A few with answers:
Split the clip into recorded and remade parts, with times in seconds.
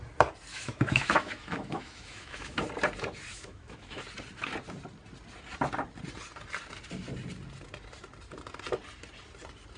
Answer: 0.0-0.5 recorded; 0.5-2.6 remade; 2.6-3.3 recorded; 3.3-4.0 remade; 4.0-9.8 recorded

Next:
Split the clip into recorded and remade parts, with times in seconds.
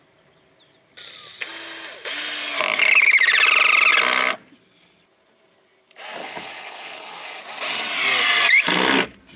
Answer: 0.0-6.2 recorded; 6.2-7.4 remade; 7.4-9.4 recorded